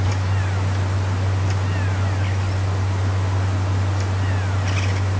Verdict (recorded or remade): recorded